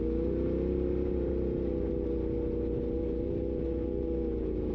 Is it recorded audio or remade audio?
recorded